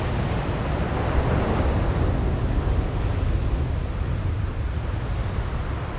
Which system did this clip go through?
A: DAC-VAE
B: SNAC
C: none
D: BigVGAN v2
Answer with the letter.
C